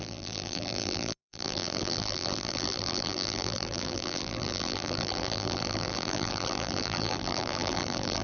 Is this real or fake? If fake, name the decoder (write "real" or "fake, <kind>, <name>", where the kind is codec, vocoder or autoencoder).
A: fake, vocoder, BigVGAN v2